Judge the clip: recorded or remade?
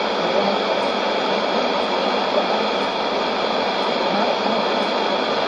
recorded